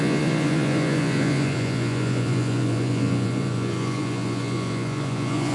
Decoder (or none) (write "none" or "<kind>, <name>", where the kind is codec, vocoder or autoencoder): vocoder, Vocos